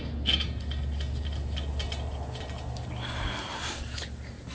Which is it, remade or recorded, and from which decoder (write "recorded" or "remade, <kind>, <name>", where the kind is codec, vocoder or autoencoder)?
recorded